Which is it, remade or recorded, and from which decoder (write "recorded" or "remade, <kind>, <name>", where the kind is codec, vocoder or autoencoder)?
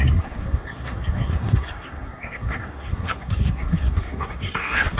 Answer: remade, codec, SNAC